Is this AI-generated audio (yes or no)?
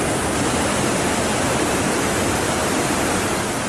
no